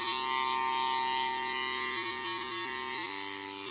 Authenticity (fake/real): real